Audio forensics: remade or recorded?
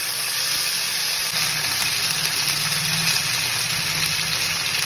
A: recorded